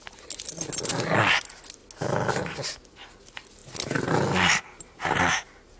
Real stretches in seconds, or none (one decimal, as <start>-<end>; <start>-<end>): 0.0-5.8